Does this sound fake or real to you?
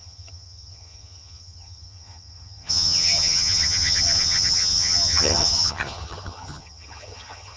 fake